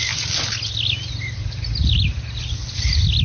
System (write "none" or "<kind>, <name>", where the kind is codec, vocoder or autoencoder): none